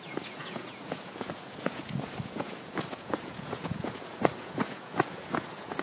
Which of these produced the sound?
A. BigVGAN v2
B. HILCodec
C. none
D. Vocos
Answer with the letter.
D